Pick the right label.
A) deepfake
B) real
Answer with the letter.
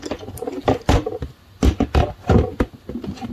B